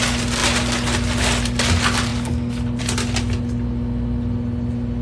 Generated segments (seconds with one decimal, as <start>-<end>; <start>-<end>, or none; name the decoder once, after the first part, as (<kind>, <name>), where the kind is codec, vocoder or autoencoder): none